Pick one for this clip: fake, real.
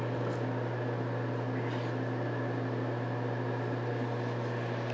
real